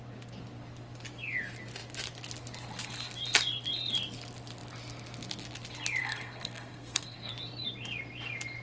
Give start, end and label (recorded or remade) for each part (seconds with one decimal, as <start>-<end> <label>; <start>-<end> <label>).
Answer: 0.0-6.0 recorded; 6.0-7.3 remade; 7.3-8.6 recorded